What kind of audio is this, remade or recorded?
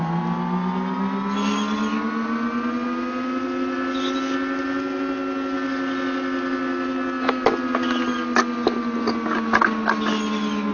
recorded